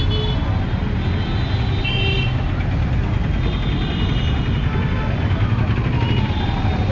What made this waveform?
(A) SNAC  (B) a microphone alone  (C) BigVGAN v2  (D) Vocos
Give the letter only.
B